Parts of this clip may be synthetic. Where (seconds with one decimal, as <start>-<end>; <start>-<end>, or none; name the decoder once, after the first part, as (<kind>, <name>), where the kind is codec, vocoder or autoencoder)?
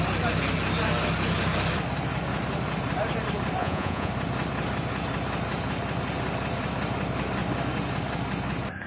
3.6-4.1 (vocoder, Vocos)